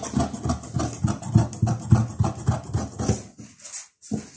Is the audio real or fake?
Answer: real